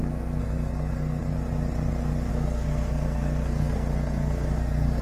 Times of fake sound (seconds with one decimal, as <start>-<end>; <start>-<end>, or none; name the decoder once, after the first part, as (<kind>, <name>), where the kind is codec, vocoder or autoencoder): 0.0-1.2 (codec, SNAC); 2.3-5.0